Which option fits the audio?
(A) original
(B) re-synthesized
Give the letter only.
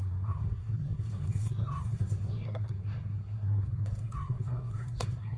B